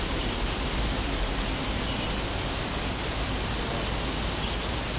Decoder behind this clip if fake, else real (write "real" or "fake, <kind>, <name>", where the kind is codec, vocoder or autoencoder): real